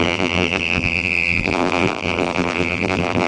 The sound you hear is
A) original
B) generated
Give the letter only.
B